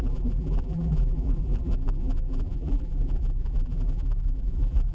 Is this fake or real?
fake